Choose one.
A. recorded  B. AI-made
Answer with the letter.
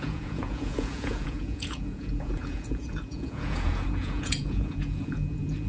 B